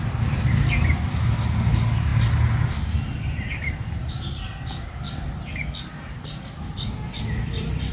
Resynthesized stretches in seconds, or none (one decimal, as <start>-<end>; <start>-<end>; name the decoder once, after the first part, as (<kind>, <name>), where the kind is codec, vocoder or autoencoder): none